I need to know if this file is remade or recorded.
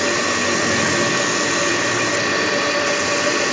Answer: remade